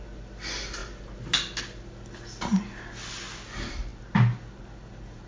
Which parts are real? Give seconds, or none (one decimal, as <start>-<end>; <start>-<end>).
0.0-5.3